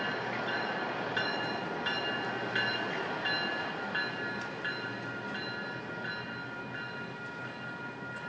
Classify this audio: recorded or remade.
recorded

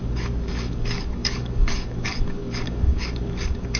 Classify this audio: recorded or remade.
remade